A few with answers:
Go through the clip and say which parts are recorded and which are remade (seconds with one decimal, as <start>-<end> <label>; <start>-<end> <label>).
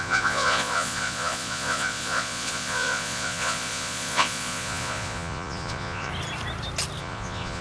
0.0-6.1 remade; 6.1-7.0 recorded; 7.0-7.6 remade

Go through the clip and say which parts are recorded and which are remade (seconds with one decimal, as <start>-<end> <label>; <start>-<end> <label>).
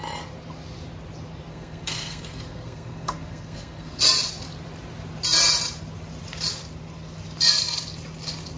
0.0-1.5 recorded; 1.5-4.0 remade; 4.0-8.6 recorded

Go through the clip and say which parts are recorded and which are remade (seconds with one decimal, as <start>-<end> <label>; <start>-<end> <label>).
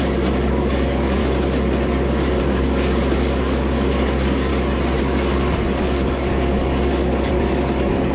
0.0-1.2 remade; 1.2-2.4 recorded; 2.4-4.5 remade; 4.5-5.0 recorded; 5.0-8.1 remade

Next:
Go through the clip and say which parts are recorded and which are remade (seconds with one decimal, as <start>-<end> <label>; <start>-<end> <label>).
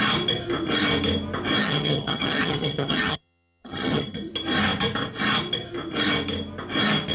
0.0-1.6 recorded; 1.6-4.3 remade; 4.3-7.1 recorded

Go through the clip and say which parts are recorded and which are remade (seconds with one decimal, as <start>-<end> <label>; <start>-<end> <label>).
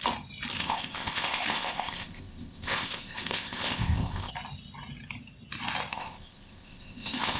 0.0-0.6 recorded; 0.6-4.3 remade; 4.3-5.9 recorded; 5.9-7.4 remade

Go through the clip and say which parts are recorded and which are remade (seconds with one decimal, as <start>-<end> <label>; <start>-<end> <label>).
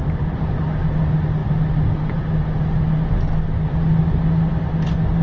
0.0-5.2 recorded